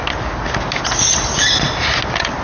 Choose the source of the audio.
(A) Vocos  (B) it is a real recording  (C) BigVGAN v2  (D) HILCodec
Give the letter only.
B